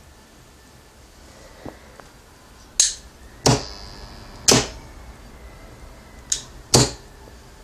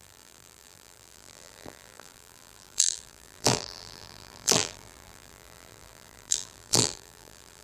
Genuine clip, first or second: first